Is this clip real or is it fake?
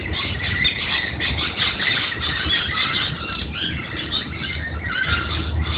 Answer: real